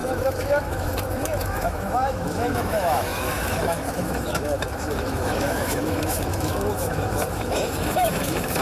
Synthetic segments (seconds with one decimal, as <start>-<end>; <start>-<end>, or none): 0.0-8.6